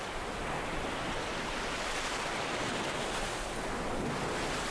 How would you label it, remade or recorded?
recorded